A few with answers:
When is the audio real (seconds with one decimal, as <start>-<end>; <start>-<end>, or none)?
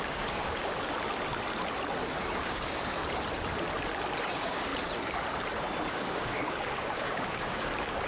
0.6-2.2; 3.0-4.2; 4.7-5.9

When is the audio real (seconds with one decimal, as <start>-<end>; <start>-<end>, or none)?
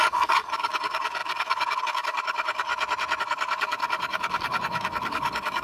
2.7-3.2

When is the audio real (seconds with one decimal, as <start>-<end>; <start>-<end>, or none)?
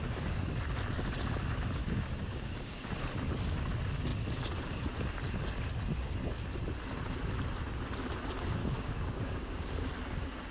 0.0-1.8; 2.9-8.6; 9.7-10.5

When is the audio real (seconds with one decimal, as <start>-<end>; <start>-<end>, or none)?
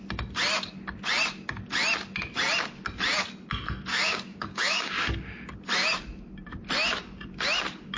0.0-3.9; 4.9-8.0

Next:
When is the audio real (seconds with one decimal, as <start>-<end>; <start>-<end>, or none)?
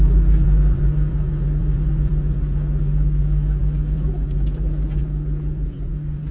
0.0-6.3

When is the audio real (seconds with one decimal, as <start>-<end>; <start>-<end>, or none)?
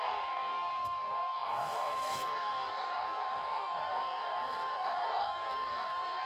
none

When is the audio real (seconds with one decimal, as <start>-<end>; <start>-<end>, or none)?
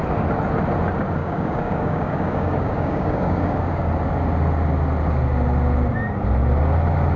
0.0-1.2; 3.9-7.2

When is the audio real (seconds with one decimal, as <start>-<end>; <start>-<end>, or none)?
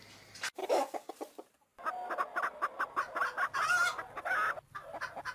0.0-0.6; 1.1-5.3